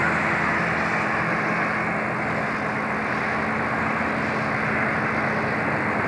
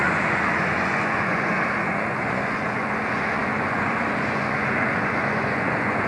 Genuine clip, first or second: first